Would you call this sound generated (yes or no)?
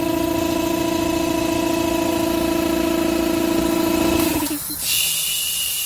no